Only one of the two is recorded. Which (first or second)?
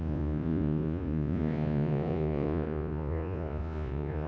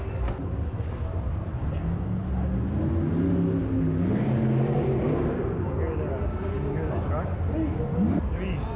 second